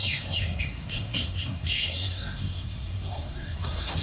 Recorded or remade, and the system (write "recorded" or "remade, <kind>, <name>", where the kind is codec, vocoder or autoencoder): remade, codec, SNAC